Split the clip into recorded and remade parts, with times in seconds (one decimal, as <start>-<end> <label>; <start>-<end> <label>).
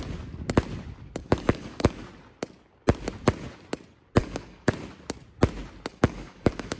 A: 0.0-1.2 recorded; 1.2-2.0 remade; 2.0-4.2 recorded; 4.2-4.7 remade; 4.7-5.9 recorded; 5.9-6.8 remade